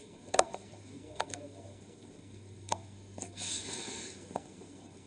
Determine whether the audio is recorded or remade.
remade